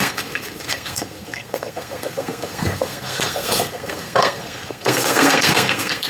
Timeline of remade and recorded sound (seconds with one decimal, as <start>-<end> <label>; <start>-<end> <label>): 0.0-6.1 remade

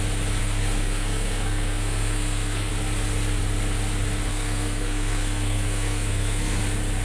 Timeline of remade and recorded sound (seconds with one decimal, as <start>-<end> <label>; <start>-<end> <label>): 0.0-0.4 recorded; 0.4-2.7 remade; 2.7-4.3 recorded; 4.3-6.6 remade; 6.6-7.0 recorded